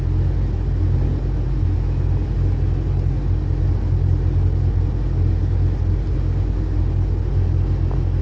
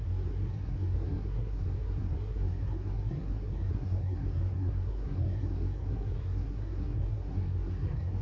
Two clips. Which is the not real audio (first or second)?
second